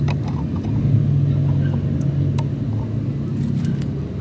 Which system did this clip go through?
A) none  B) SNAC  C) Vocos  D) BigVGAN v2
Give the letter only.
A